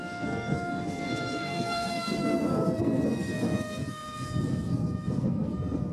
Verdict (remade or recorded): remade